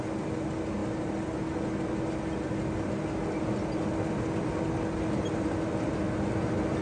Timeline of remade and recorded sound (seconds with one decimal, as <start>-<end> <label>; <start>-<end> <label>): 0.0-6.8 recorded